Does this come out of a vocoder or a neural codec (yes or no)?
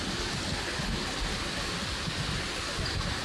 no